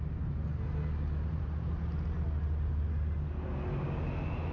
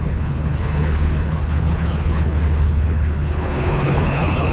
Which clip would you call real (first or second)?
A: first